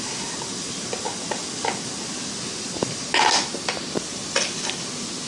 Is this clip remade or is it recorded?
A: recorded